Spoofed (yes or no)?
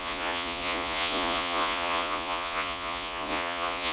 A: yes